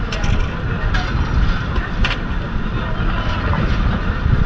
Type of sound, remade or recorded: recorded